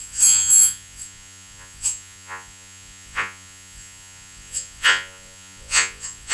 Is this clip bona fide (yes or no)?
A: no